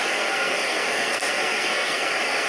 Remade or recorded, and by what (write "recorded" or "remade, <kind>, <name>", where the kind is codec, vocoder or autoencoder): remade, codec, SNAC